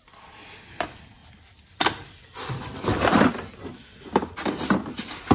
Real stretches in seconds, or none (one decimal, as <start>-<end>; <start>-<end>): 1.2-2.5; 3.8-5.3